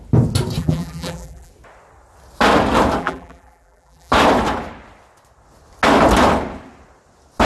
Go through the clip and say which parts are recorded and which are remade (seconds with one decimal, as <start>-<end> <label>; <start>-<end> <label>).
0.0-0.6 recorded; 0.6-1.5 remade; 1.5-3.0 recorded; 3.0-4.1 remade; 4.1-7.5 recorded